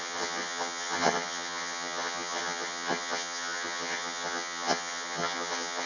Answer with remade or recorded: remade